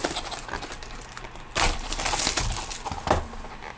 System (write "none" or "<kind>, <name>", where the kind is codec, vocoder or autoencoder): none